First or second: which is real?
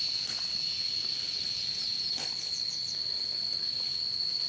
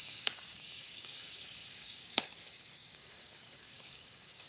first